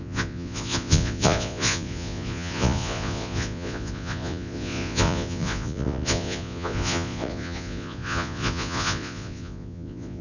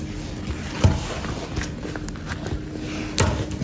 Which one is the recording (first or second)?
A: second